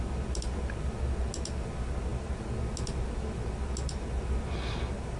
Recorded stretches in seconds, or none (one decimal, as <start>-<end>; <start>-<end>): 0.0-5.2